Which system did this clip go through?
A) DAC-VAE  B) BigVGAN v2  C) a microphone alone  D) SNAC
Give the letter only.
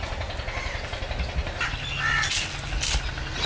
C